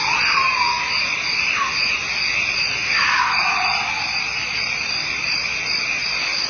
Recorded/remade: recorded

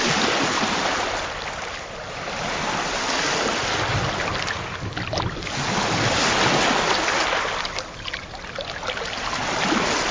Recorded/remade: recorded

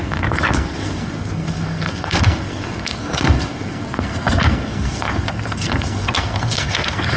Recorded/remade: remade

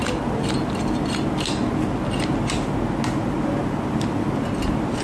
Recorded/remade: recorded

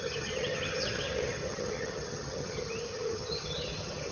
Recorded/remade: remade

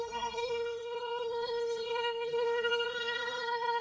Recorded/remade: remade